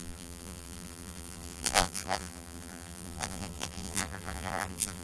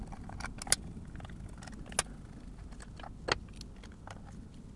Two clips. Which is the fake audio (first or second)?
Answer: first